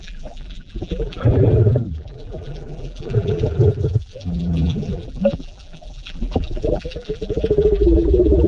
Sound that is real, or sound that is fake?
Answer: fake